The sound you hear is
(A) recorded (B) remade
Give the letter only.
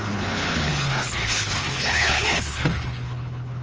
B